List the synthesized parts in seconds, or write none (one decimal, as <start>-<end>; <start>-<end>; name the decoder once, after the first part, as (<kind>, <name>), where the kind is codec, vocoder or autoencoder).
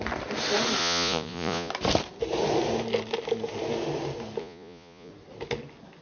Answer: 0.8-1.7 (vocoder, Vocos); 4.4-5.1